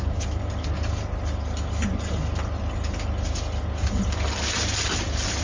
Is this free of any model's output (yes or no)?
yes